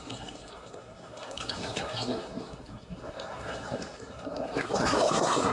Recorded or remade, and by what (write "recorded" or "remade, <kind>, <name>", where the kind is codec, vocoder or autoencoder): remade, codec, SNAC